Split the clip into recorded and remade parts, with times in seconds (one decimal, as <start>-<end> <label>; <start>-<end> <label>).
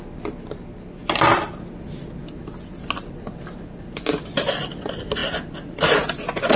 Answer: 0.0-6.6 recorded